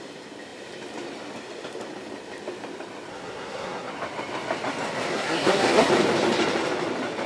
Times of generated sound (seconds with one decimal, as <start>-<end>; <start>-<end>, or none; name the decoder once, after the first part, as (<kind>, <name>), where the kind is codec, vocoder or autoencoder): 3.1-3.9 (codec, SNAC); 5.1-5.9